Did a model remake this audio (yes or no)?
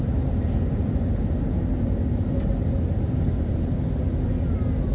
no